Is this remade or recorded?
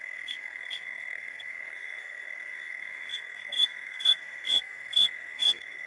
remade